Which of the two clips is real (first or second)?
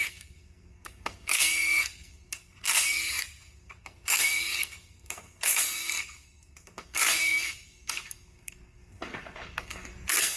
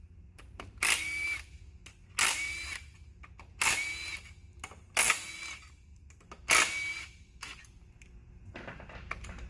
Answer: second